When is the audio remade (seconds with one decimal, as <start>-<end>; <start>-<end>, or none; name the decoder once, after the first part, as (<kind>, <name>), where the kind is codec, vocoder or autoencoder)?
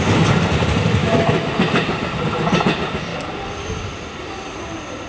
1.0-1.5 (autoencoder, DAC-VAE)